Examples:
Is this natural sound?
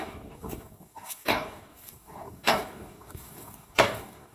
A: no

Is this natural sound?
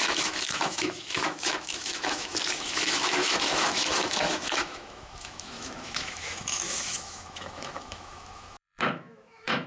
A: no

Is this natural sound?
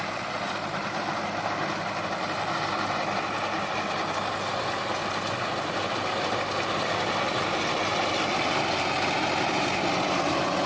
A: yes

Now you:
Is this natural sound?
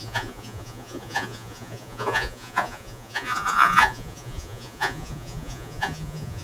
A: no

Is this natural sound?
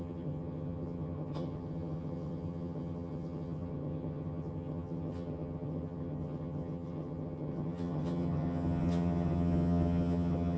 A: no